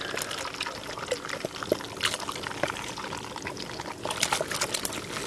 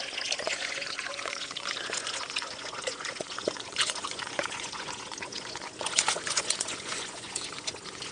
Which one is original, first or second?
first